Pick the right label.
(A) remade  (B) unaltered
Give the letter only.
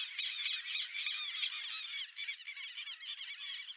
B